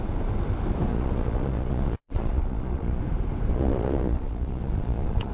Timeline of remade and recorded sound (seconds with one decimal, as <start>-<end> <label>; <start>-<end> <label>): 0.0-0.9 recorded; 0.9-3.0 remade; 3.0-3.5 recorded; 3.5-5.3 remade